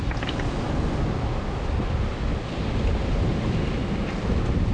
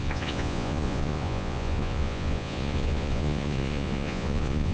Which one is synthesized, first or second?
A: second